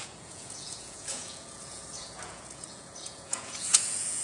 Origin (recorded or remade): remade